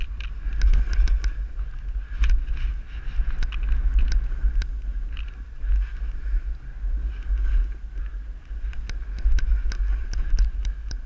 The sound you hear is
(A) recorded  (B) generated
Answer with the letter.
A